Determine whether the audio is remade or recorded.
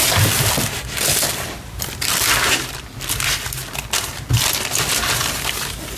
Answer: recorded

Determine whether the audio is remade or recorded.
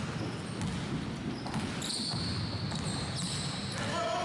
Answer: recorded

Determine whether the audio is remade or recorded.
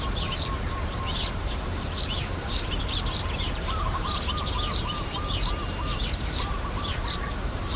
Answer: remade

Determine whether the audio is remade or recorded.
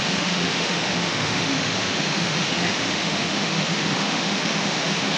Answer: remade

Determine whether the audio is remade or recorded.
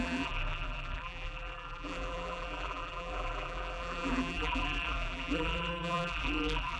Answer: remade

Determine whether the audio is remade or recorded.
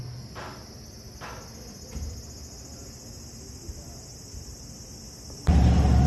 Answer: recorded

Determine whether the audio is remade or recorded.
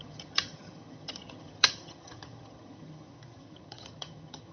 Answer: remade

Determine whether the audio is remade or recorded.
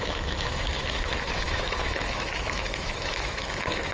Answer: remade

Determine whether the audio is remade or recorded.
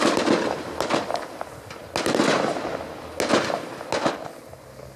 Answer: recorded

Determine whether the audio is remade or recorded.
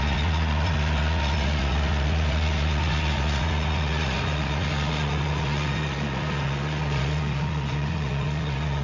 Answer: remade